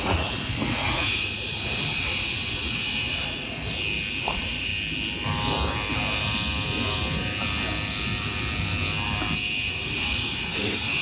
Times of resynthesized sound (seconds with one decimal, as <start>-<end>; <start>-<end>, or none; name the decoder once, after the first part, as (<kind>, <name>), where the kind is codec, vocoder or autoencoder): 0.0-3.6 (vocoder, Vocos); 4.2-4.7; 9.7-11.0